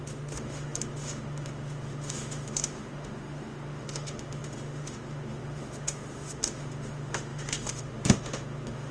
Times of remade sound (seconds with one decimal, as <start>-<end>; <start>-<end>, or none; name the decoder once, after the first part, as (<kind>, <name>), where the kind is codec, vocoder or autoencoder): 0.0-8.9 (autoencoder, DAC-VAE)